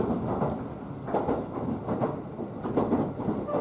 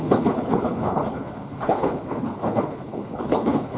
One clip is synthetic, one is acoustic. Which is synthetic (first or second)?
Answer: second